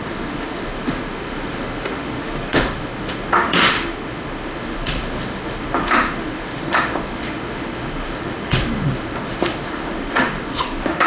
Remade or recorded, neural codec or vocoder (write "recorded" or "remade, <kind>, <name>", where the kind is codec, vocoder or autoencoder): remade, autoencoder, DAC-VAE